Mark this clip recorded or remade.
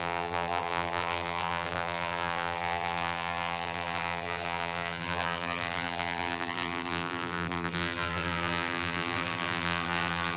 remade